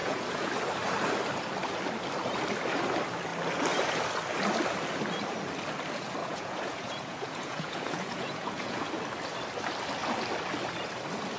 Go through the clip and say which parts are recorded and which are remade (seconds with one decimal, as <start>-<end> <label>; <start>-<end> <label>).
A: 0.0-0.5 remade; 0.5-6.2 recorded; 6.2-8.9 remade; 8.9-11.4 recorded